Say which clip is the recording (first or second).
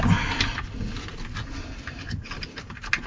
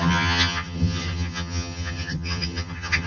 first